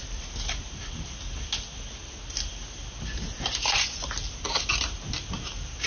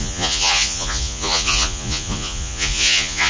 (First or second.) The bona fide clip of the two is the first